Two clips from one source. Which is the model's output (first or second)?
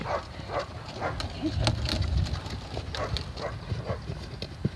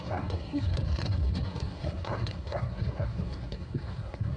second